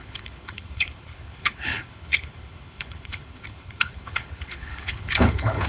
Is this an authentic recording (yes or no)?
no